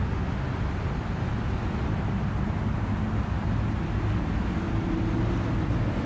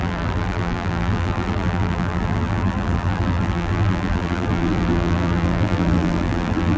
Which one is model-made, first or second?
second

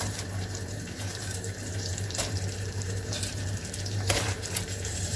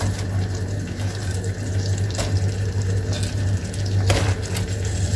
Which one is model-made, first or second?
first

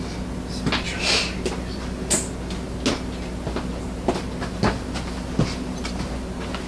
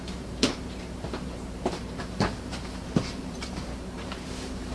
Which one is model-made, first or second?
second